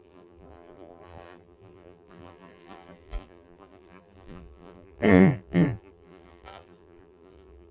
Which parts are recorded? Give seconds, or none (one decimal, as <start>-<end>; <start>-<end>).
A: none